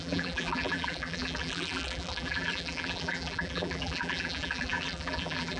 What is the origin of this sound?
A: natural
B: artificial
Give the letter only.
B